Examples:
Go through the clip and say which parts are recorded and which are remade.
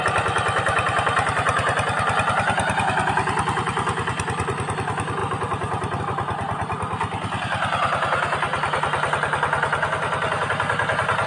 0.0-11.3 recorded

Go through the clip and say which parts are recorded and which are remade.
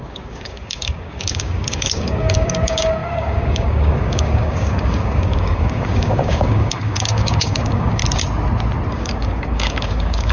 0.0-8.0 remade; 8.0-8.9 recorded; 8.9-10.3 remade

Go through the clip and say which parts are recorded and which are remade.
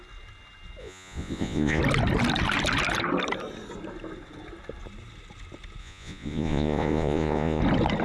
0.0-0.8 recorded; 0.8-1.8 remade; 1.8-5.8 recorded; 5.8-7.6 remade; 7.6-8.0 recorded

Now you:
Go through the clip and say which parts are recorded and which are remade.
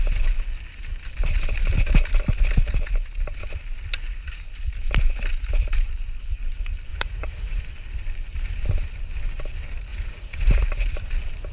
0.0-6.9 recorded; 6.9-7.6 remade; 7.6-9.9 recorded; 9.9-10.6 remade; 10.6-11.5 recorded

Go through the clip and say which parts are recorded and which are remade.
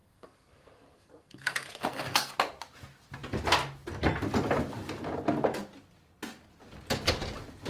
0.0-2.3 remade; 2.3-7.7 recorded